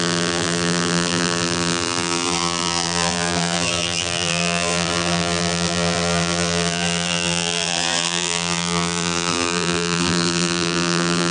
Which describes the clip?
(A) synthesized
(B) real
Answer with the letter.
A